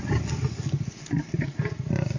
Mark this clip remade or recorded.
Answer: recorded